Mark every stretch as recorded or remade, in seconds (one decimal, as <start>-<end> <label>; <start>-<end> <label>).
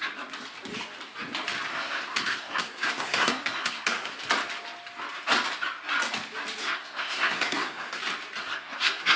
0.0-1.7 recorded; 1.7-4.2 remade; 4.2-6.6 recorded; 6.6-8.0 remade; 8.0-8.4 recorded; 8.4-9.2 remade